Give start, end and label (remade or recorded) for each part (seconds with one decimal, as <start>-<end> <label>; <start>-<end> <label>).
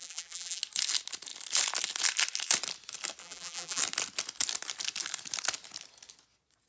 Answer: 0.0-0.6 remade; 0.6-3.2 recorded; 3.2-3.8 remade; 3.8-6.7 recorded